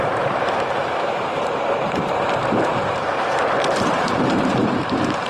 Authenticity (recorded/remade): remade